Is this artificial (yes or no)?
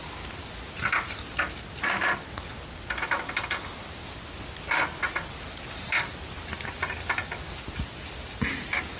no